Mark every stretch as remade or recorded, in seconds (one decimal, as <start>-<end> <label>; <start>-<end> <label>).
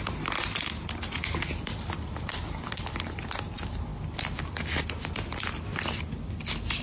0.0-6.8 recorded